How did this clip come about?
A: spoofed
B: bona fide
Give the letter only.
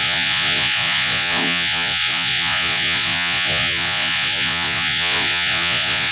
A